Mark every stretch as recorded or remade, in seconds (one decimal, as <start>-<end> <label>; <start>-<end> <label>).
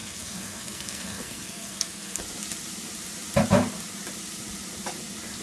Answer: 0.0-2.2 remade; 2.2-5.4 recorded